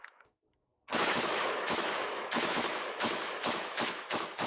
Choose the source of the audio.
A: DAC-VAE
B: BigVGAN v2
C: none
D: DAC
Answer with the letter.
A